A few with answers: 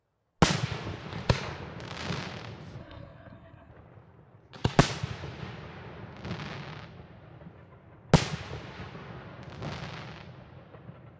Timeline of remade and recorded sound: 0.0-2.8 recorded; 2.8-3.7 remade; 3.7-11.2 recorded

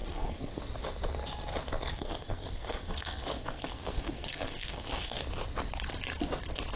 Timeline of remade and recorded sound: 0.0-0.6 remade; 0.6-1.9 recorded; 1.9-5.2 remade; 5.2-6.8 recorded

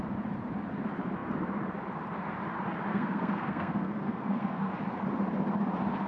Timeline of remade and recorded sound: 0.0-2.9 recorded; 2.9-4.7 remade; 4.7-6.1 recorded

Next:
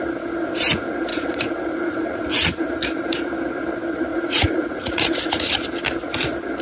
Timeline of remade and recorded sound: 0.0-1.1 recorded; 1.1-2.7 remade; 2.7-4.1 recorded; 4.1-5.5 remade; 5.5-6.6 recorded

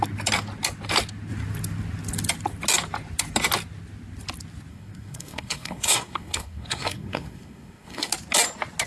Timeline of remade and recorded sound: 0.0-4.7 recorded; 4.7-8.1 remade; 8.1-8.9 recorded